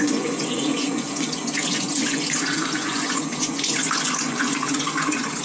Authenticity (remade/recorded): remade